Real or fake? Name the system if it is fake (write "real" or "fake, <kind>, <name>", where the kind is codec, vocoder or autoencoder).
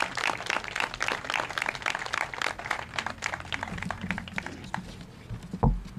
real